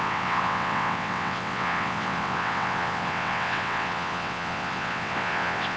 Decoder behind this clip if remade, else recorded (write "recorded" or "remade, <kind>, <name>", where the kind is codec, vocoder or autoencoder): remade, vocoder, WaveNeXt